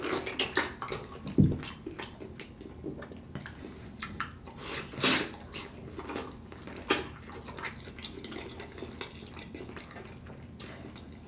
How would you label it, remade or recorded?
recorded